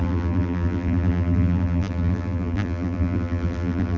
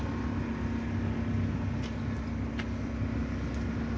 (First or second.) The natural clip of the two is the second